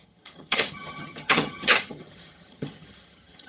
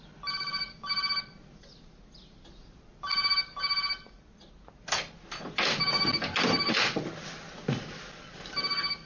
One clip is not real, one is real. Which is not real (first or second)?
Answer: first